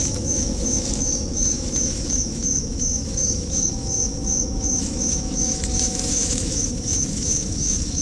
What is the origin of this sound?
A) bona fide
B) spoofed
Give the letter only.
B